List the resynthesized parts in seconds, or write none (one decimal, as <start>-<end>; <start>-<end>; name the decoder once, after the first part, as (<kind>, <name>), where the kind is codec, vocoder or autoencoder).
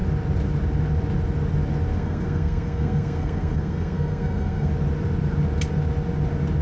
1.9-4.7 (codec, SNAC)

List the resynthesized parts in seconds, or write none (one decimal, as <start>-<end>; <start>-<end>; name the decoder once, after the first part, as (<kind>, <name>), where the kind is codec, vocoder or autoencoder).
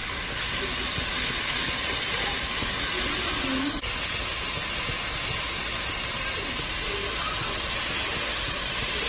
none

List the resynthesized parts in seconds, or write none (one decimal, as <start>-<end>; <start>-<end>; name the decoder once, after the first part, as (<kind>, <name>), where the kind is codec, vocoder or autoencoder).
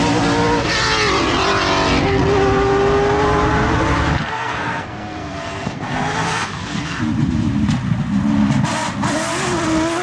4.2-7.0 (codec, SNAC)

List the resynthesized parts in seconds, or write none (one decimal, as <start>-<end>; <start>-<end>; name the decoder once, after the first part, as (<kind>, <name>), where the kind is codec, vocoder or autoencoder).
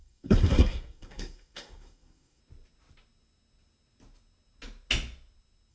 0.0-2.4 (codec, SNAC)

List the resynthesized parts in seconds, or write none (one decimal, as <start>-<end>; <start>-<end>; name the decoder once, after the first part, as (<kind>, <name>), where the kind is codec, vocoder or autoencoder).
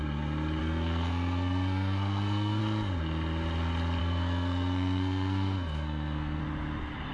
0.6-2.6 (codec, SNAC); 4.0-6.4